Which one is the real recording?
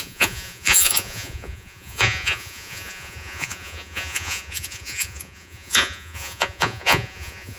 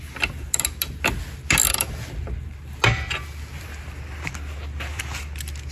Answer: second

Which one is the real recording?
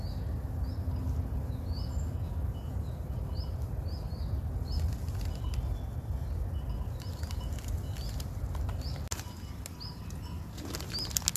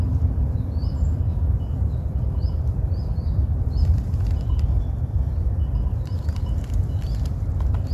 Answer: first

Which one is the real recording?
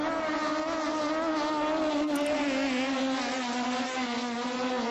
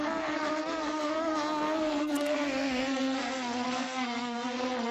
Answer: first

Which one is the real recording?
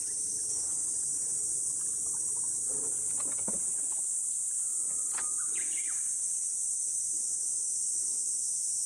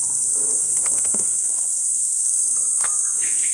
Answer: first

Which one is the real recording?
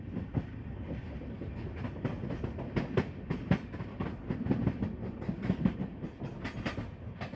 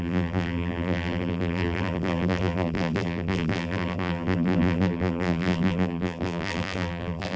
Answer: first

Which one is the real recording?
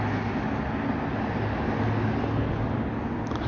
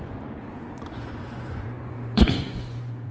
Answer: first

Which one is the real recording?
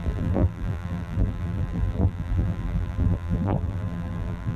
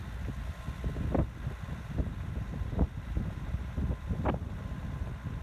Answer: second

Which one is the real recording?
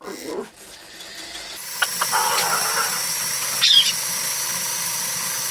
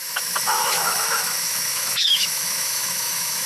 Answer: first